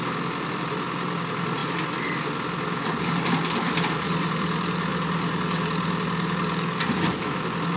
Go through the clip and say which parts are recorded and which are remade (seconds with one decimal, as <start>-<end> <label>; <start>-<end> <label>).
0.0-1.6 remade; 1.6-3.2 recorded; 3.2-4.9 remade; 4.9-6.8 recorded; 6.8-7.8 remade